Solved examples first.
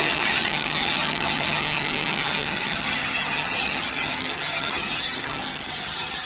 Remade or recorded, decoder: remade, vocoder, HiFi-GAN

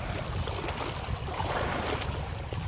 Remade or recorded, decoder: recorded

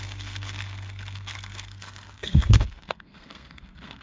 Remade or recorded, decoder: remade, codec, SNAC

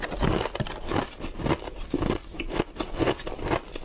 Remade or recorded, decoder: recorded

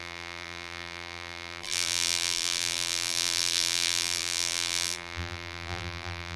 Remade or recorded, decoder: remade, vocoder, BigVGAN v2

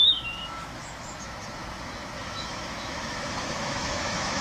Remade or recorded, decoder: remade, autoencoder, DAC-VAE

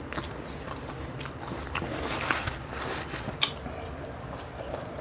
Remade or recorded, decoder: recorded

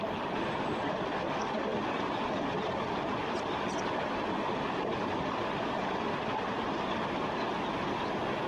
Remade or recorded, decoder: recorded